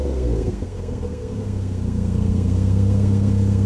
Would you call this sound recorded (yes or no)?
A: no